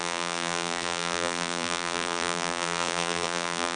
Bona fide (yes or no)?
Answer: no